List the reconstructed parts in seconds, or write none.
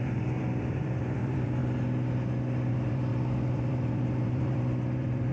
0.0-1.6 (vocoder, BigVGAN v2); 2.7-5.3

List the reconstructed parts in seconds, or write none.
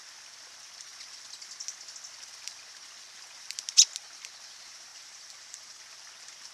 4.9-5.8 (vocoder, BigVGAN v2)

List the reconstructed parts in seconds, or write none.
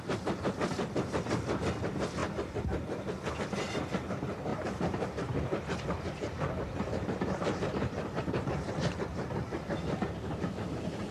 4.5-8.7 (vocoder, BigVGAN v2)